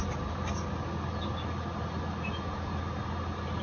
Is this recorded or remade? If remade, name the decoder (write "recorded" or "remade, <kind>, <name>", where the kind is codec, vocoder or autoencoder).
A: recorded